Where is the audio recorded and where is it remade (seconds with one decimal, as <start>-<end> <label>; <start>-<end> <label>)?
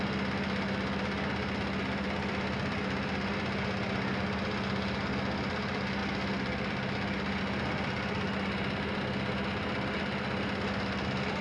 0.0-11.4 recorded